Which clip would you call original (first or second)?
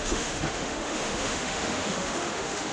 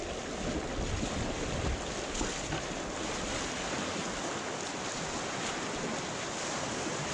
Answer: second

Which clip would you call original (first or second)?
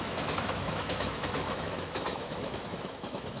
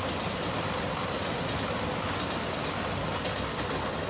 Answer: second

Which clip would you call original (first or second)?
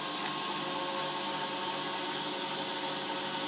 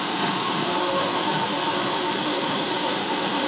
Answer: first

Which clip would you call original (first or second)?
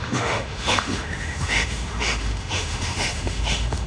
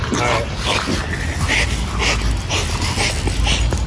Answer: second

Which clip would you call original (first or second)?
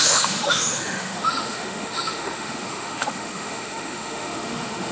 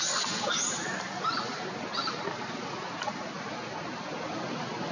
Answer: second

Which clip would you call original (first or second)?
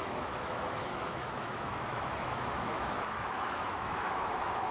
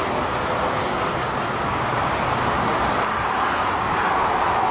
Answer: second